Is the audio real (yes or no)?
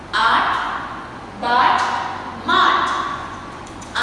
no